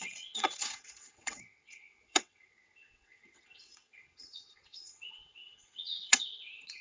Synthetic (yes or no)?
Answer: yes